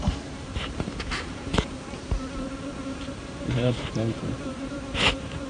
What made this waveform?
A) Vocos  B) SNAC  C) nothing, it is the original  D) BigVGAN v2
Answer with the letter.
D